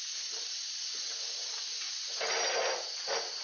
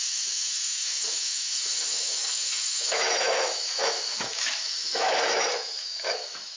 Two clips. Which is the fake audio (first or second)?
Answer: second